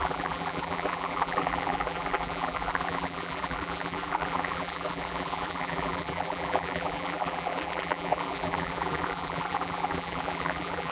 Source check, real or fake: fake